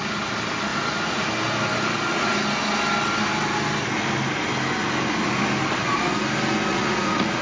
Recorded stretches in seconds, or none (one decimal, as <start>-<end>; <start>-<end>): 0.0-6.7